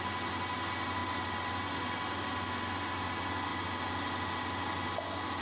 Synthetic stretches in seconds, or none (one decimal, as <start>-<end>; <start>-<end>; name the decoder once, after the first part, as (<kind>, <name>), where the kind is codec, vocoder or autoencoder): none